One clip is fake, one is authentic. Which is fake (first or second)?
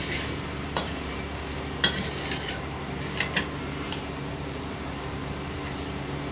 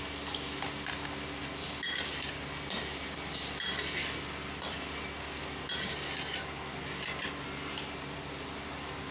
first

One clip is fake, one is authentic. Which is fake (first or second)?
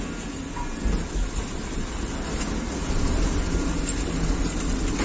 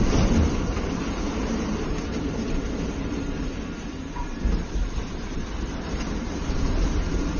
second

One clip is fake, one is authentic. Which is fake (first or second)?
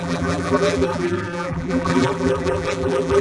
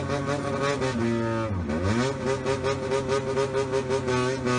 first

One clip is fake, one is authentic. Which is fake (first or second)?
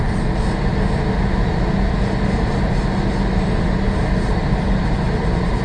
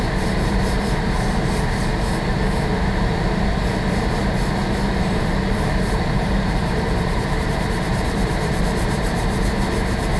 second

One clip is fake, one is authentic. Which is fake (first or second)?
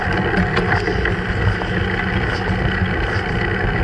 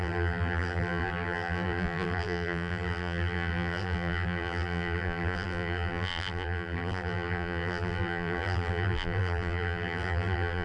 second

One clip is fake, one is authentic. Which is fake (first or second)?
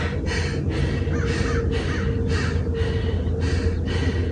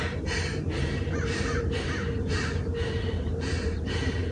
second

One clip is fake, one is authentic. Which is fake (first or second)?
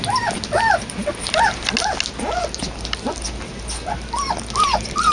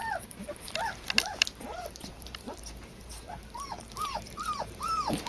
second